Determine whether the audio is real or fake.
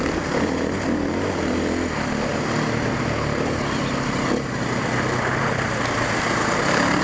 real